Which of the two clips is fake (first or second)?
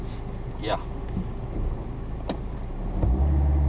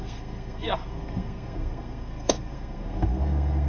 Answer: second